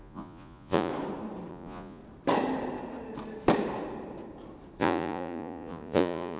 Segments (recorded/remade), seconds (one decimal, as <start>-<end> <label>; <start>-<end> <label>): 0.0-0.9 remade; 0.9-1.5 recorded; 1.5-2.0 remade; 2.0-4.8 recorded; 4.8-6.4 remade